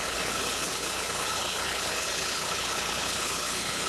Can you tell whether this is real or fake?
fake